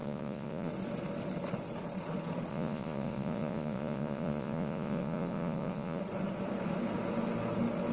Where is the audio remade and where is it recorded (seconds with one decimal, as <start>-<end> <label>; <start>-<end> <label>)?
0.0-0.7 remade; 0.7-2.5 recorded; 2.5-6.0 remade; 6.0-7.9 recorded